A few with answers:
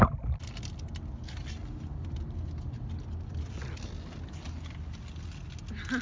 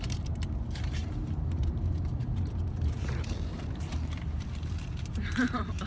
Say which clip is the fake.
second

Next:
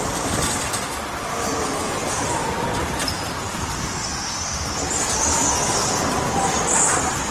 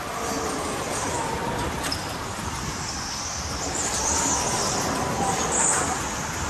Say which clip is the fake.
first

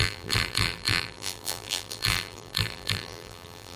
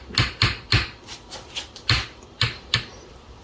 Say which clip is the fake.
first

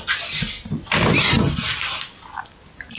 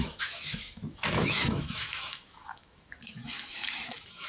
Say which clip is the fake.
second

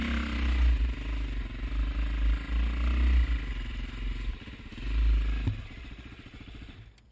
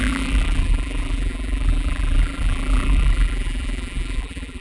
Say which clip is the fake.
second